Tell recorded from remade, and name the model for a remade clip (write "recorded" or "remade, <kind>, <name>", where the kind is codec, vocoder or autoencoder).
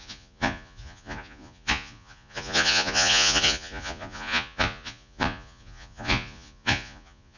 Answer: remade, vocoder, Vocos